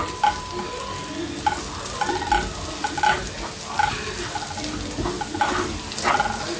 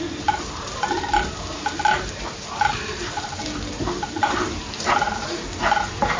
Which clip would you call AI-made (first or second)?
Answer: second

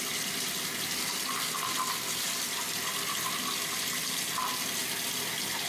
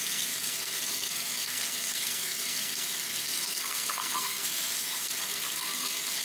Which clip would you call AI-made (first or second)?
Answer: second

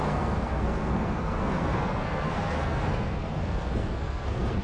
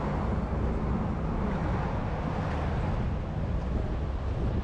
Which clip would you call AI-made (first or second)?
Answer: first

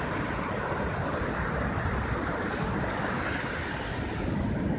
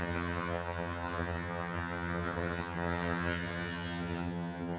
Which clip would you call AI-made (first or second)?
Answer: second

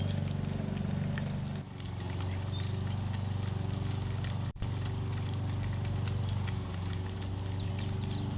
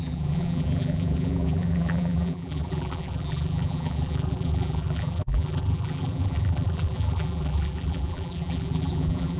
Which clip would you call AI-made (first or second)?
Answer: second